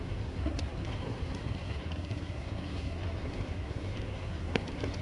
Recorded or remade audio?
remade